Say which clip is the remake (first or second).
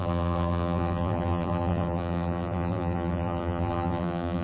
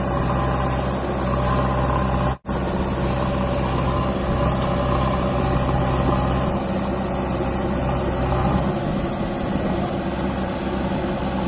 first